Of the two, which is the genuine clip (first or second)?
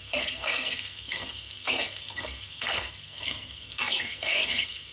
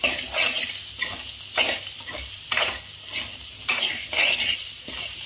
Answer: second